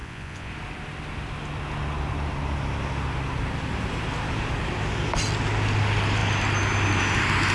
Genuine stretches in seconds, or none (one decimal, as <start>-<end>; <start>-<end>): 0.5-7.5